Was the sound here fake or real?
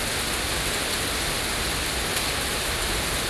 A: real